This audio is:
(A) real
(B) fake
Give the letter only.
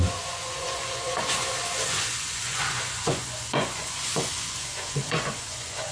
B